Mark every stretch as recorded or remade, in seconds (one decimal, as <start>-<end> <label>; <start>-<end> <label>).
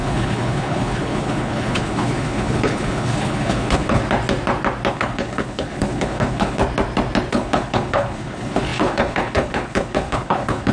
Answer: 0.0-4.0 remade; 4.0-4.9 recorded; 4.9-6.6 remade; 6.6-7.3 recorded; 7.3-10.7 remade